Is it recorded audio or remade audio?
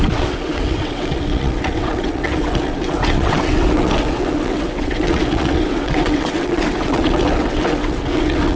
remade